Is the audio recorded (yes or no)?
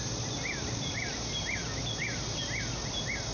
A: yes